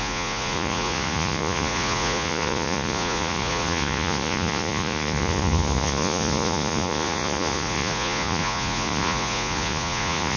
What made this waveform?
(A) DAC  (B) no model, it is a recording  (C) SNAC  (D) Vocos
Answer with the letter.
D